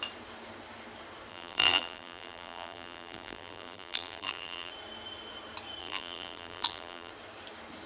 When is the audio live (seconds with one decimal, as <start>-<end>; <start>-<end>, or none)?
0.0-1.3; 4.7-5.8; 7.1-7.9